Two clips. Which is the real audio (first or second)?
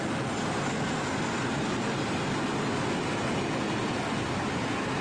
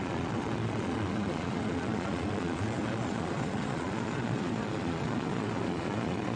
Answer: first